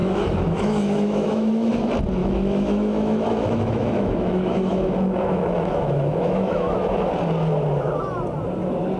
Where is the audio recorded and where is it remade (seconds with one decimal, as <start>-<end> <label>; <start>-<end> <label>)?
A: 0.0-1.7 remade; 1.7-2.2 recorded; 2.2-7.1 remade; 7.1-9.0 recorded